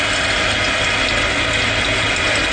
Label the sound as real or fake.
real